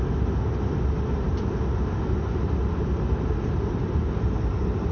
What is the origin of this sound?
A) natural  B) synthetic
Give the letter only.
A